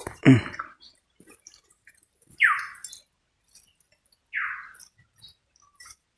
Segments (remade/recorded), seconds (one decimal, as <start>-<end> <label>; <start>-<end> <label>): 0.0-2.8 remade; 2.8-5.0 recorded; 5.0-6.2 remade